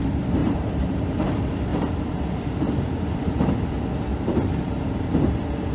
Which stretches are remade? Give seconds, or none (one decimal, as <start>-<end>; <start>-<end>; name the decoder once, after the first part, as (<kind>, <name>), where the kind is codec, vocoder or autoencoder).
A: 0.4-1.2 (vocoder, BigVGAN v2); 1.7-3.5; 4.1-5.1